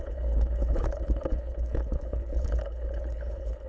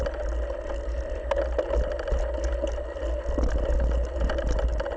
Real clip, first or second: second